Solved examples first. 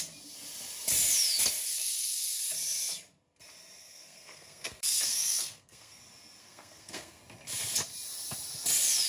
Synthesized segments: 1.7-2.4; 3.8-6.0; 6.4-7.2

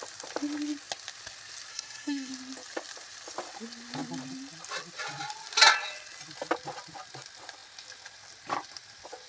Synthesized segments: 1.7-2.3

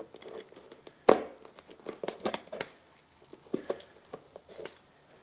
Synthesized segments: none

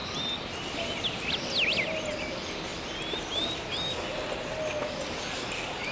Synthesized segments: none

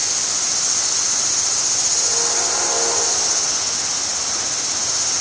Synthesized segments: none

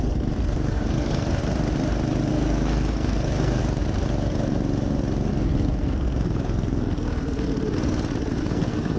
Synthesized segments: 0.0-1.4; 2.3-3.6; 5.3-7.5; 8.4-9.0